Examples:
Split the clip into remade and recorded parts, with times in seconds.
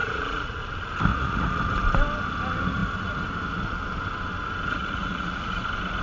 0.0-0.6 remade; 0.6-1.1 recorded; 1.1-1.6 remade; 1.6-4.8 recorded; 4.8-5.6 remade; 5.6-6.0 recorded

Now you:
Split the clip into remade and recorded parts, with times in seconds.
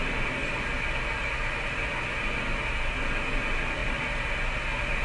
0.0-5.0 recorded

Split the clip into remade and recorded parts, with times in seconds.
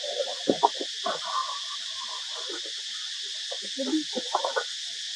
0.0-1.4 remade; 1.4-4.5 recorded; 4.5-5.2 remade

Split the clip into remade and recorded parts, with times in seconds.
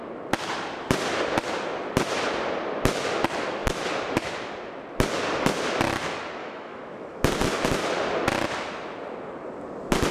0.0-6.4 recorded; 6.4-7.2 remade; 7.2-10.1 recorded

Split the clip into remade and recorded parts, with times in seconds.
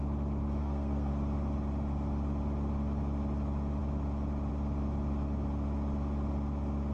0.0-0.6 recorded; 0.6-1.1 remade; 1.1-6.9 recorded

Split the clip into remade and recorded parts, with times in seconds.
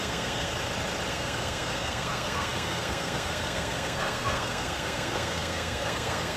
0.0-0.5 remade; 0.5-1.1 recorded; 1.1-6.4 remade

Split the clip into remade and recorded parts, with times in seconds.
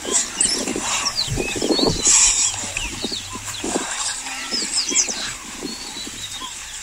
0.0-0.7 recorded; 0.7-4.8 remade; 4.8-6.8 recorded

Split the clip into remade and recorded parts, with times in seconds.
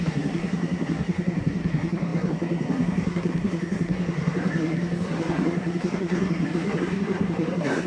0.0-7.9 remade